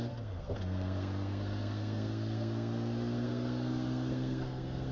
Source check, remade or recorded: remade